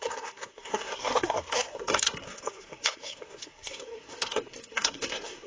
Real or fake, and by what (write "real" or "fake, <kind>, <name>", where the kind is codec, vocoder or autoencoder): fake, codec, SNAC